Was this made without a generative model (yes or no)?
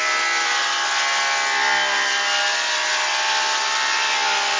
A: yes